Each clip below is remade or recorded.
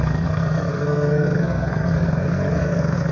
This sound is remade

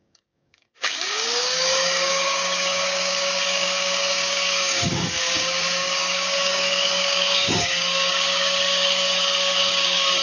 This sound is remade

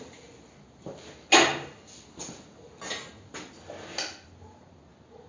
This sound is recorded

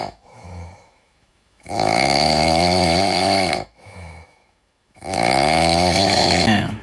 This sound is remade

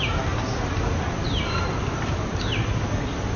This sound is recorded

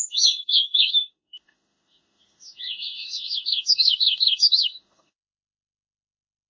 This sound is remade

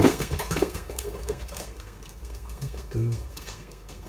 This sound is remade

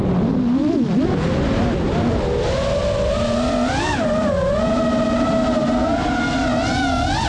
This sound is recorded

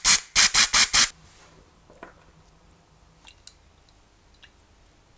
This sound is recorded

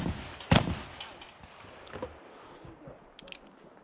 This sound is recorded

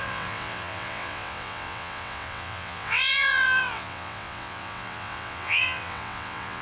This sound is remade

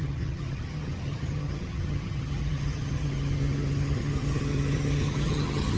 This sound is remade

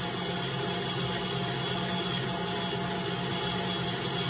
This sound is recorded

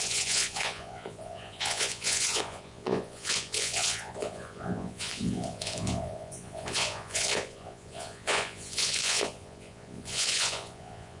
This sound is remade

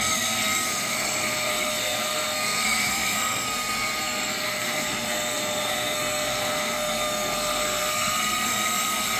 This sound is remade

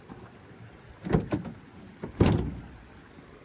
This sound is recorded